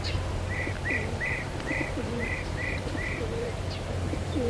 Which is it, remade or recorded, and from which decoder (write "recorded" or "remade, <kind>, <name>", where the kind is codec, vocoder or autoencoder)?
remade, vocoder, BigVGAN v2